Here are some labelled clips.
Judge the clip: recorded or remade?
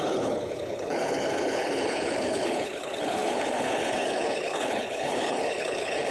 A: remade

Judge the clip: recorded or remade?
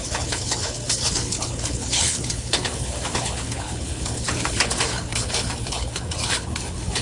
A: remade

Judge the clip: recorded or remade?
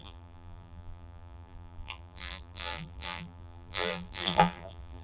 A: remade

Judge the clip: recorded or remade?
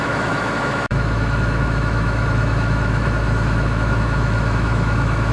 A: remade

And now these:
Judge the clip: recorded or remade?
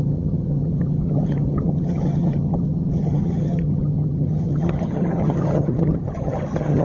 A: remade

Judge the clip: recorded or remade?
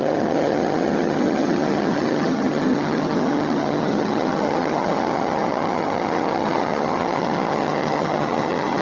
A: remade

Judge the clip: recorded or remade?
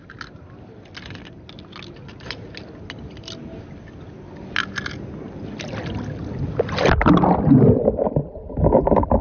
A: recorded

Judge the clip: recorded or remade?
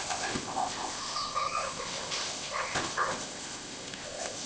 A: remade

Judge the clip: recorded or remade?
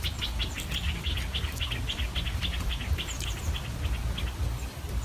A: recorded